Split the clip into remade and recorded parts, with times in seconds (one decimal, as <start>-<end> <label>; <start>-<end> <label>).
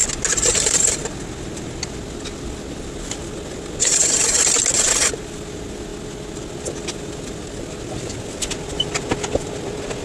0.0-10.0 recorded